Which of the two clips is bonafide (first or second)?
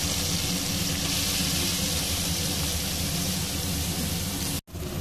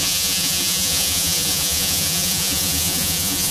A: first